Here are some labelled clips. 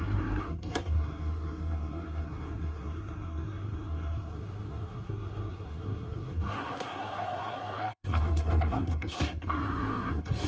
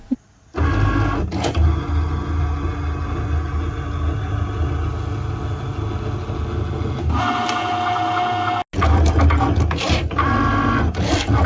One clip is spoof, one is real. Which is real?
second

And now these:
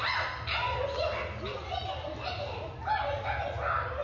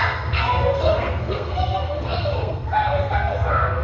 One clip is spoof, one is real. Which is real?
first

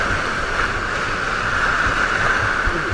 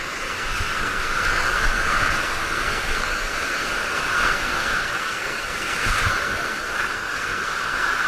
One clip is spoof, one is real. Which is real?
first